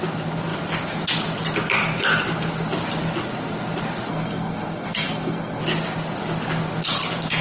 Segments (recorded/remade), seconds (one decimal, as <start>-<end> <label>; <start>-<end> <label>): 0.0-4.1 recorded; 4.1-5.6 remade; 5.6-7.4 recorded